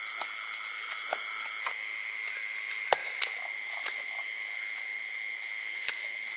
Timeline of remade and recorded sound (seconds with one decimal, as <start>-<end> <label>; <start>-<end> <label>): 0.0-3.0 recorded; 3.0-6.4 remade